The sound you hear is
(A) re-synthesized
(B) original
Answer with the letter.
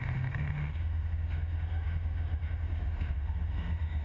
A